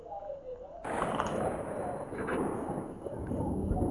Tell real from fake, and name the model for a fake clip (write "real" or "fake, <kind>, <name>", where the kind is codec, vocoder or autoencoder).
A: real